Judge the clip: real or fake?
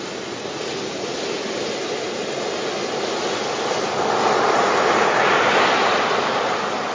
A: real